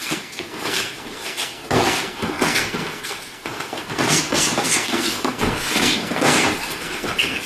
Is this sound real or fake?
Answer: fake